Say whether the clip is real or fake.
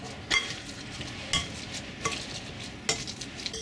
real